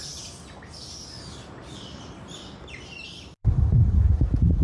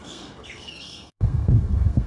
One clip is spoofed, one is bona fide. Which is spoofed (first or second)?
second